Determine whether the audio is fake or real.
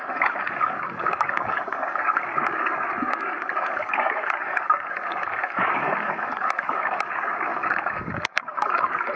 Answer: fake